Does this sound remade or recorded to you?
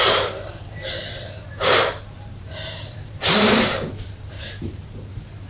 remade